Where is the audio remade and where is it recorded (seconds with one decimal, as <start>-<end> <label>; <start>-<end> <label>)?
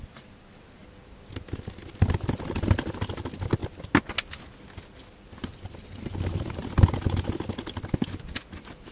0.0-0.8 remade; 0.8-1.9 recorded; 1.9-3.6 remade; 3.6-5.1 recorded; 5.1-6.6 remade; 6.6-8.5 recorded; 8.5-8.9 remade